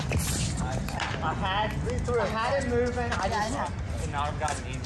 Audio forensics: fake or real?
real